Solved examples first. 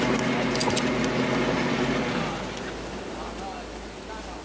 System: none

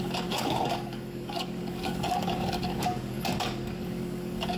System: codec, DAC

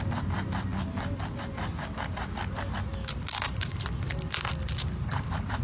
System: none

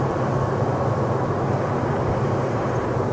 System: none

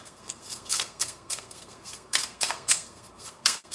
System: codec, SNAC